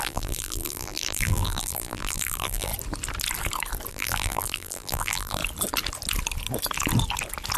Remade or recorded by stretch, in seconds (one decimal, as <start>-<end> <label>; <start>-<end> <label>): 0.0-2.7 remade; 2.7-3.9 recorded; 3.9-5.4 remade; 5.4-7.6 recorded